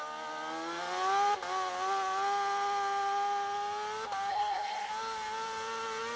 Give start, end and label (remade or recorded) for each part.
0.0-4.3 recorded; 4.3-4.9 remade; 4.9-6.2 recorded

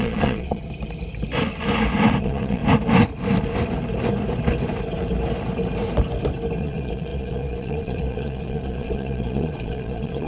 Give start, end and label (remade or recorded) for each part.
0.0-0.6 remade; 0.6-2.2 recorded; 2.2-2.6 remade; 2.6-6.6 recorded; 6.6-10.3 remade

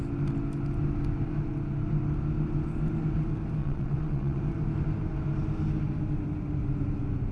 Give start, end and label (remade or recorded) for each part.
0.0-3.6 recorded; 3.6-4.4 remade; 4.4-7.3 recorded

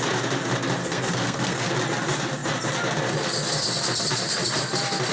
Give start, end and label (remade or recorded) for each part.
0.0-0.8 recorded; 0.8-1.7 remade; 1.7-5.1 recorded

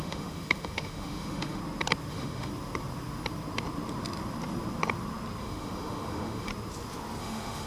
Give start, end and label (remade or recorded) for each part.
0.0-1.6 remade; 1.6-2.1 recorded; 2.1-2.5 remade; 2.5-5.4 recorded; 5.4-6.5 remade; 6.5-7.2 recorded; 7.2-7.7 remade

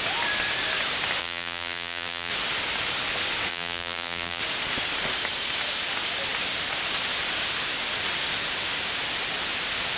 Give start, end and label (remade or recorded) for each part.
0.0-1.2 recorded; 1.2-2.3 remade; 2.3-3.5 recorded; 3.5-4.4 remade; 4.4-10.0 recorded

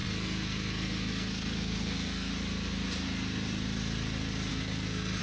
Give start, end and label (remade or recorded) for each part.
0.0-2.3 remade; 2.3-4.5 recorded; 4.5-5.2 remade